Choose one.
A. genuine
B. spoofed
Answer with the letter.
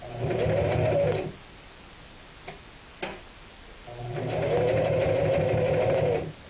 A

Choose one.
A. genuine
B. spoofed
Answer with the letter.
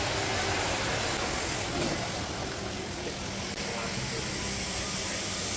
A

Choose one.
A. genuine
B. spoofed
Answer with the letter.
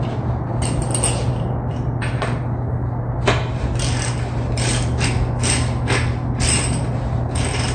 A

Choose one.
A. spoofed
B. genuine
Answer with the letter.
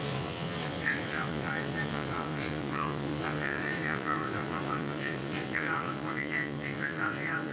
A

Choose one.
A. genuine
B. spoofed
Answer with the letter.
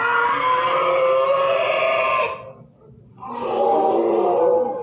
A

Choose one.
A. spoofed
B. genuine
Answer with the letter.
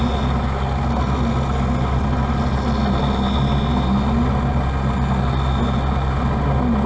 B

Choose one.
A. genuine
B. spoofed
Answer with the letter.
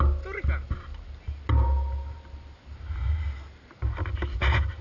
A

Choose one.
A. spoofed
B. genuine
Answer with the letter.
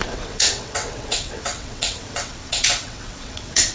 A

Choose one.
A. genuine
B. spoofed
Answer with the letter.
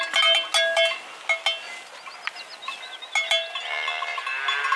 A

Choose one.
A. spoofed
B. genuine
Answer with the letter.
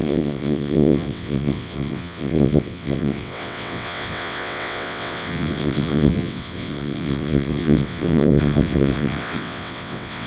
A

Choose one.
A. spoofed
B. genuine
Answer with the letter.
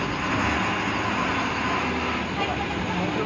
B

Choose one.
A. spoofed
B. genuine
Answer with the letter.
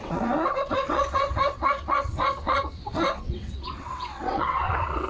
A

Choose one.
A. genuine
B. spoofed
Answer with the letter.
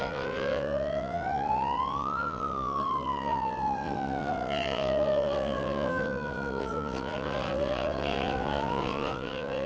B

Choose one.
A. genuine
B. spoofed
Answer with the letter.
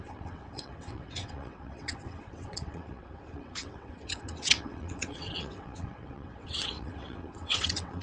B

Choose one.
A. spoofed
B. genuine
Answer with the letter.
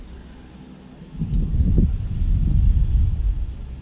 B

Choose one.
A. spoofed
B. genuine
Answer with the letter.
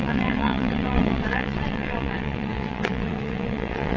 A